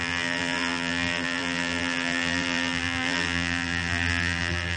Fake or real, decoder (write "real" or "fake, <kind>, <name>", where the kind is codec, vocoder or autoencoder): fake, vocoder, BigVGAN v2